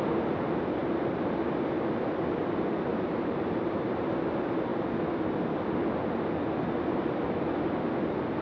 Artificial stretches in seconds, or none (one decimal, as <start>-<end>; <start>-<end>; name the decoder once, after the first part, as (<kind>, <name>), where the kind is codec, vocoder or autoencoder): 0.8-1.4 (vocoder, BigVGAN v2); 2.9-4.1